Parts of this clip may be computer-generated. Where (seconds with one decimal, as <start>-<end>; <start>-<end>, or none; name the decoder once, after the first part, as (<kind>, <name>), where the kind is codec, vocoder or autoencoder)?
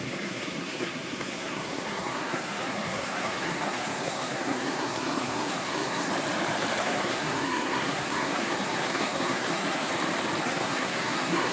0.0-6.1 (codec, SNAC); 6.8-9.9; 10.4-11.5